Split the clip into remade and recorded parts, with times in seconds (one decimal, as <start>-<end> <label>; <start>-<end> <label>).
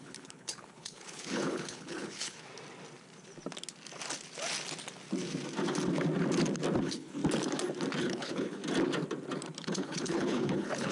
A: 0.0-2.5 remade; 2.5-6.8 recorded; 6.8-7.2 remade; 7.2-8.0 recorded; 8.0-8.6 remade; 8.6-9.6 recorded; 9.6-10.9 remade